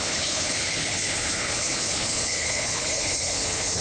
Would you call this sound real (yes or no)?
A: no